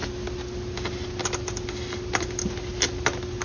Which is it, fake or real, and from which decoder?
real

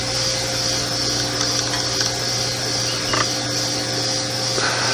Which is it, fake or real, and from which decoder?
real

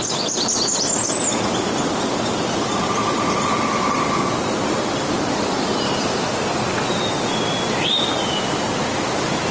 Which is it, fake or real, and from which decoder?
fake, vocoder, BigVGAN v2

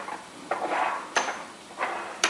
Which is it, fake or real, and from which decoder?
fake, vocoder, BigVGAN v2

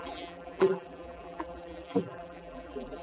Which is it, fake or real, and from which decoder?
fake, vocoder, BigVGAN v2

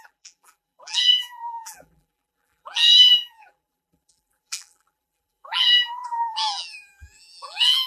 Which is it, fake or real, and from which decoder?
fake, vocoder, BigVGAN v2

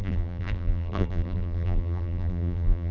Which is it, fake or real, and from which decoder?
fake, vocoder, BigVGAN v2